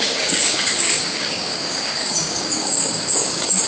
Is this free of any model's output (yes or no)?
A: no